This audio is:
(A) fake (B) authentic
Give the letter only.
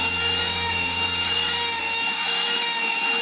A